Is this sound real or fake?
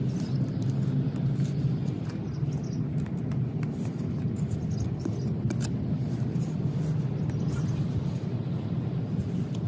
real